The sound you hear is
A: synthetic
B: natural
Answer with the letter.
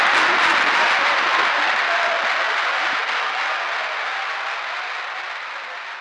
B